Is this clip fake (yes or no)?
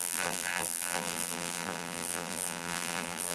yes